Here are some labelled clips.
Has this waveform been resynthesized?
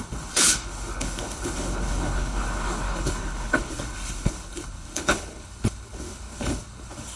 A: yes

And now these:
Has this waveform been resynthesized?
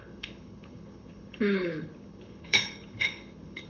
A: yes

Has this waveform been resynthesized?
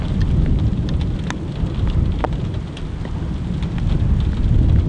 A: no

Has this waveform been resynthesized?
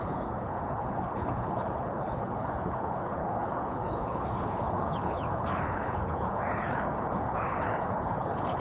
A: yes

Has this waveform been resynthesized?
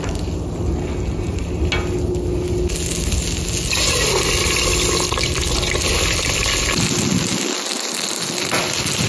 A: no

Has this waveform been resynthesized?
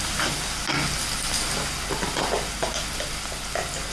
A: no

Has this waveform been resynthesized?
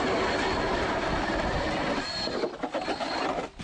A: no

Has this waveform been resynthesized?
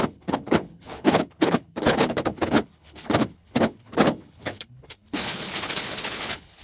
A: yes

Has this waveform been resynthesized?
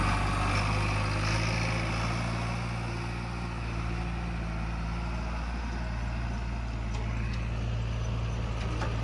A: no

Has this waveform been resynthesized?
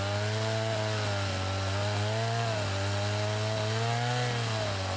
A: no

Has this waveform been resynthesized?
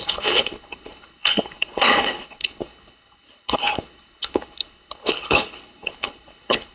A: yes